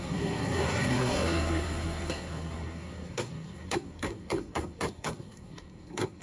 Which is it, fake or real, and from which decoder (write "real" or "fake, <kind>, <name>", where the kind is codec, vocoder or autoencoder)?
fake, codec, SNAC